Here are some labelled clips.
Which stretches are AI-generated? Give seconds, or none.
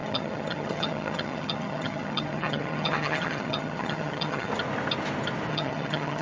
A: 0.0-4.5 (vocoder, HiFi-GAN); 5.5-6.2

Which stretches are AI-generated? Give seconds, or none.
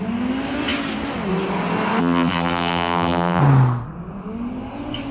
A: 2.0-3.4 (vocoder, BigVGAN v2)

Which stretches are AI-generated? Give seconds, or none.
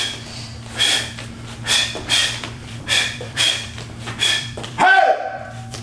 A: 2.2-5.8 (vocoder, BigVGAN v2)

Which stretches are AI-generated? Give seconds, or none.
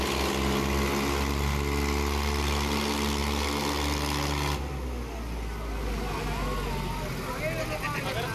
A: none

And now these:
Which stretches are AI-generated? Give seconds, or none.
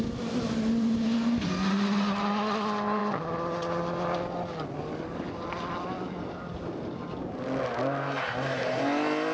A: none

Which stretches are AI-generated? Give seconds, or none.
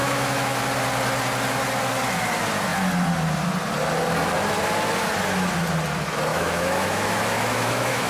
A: 0.0-0.6 (autoencoder, DAC-VAE); 6.3-8.1